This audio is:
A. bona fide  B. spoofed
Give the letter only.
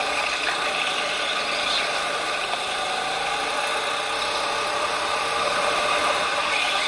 A